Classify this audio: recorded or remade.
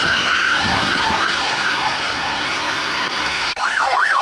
remade